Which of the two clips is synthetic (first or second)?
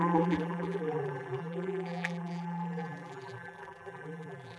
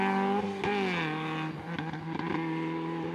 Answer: first